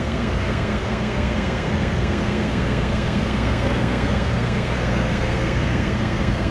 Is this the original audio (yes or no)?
no